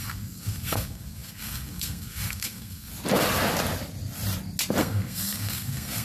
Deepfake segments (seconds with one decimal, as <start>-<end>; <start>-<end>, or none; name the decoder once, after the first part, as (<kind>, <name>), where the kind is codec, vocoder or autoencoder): 0.0-2.9 (codec, SNAC); 4.8-6.0